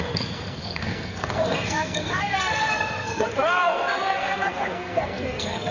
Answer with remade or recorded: remade